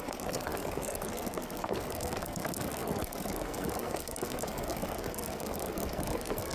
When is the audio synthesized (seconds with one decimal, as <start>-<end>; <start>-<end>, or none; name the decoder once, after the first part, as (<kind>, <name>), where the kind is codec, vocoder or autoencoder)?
0.0-6.5 (codec, SNAC)